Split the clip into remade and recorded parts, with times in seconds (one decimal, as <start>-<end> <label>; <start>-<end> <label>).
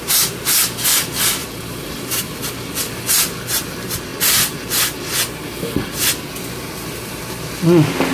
0.0-1.4 recorded; 1.4-2.4 remade; 2.4-8.1 recorded